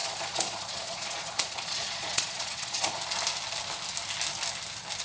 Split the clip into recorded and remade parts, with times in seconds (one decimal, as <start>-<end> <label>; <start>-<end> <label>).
0.0-3.0 remade; 3.0-5.0 recorded

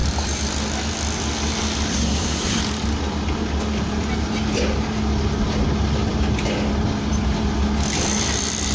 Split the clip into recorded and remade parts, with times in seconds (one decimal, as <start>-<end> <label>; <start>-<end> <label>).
0.0-1.9 recorded; 1.9-2.6 remade; 2.6-8.7 recorded

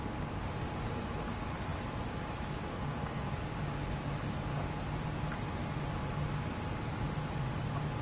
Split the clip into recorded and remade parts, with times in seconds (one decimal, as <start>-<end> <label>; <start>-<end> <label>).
0.0-2.7 recorded; 2.7-3.3 remade; 3.3-8.0 recorded

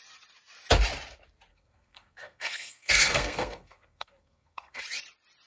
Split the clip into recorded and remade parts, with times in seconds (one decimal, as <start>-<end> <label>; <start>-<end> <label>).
0.0-1.5 recorded; 1.5-4.8 remade; 4.8-5.5 recorded

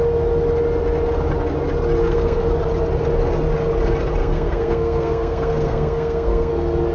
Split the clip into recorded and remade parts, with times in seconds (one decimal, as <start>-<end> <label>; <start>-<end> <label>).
0.0-2.0 recorded; 2.0-2.5 remade; 2.5-4.2 recorded; 4.2-6.5 remade; 6.5-6.9 recorded